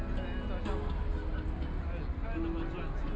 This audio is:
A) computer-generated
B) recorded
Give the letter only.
B